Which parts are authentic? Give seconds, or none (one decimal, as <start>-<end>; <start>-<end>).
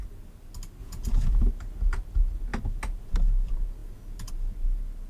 0.0-0.8; 1.5-5.1